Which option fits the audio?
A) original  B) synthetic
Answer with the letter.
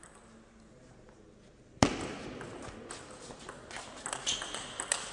A